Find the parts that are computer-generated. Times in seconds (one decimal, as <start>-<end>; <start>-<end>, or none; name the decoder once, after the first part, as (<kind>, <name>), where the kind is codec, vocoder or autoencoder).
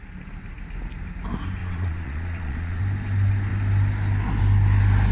1.6-2.8 (vocoder, Vocos)